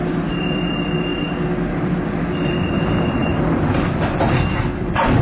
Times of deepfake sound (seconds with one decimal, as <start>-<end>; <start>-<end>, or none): 0.0-1.1; 2.5-5.2